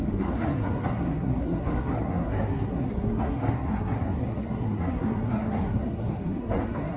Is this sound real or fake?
fake